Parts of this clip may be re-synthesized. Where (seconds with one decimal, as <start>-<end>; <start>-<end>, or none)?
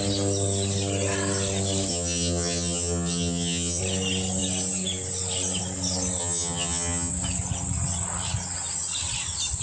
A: 1.9-3.8; 6.2-7.1